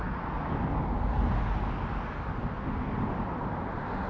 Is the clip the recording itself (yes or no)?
yes